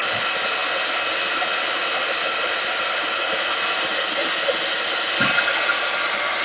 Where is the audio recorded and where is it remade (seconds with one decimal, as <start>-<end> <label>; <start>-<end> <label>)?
0.0-6.4 recorded